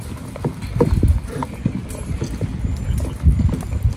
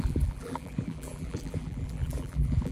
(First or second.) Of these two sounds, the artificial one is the second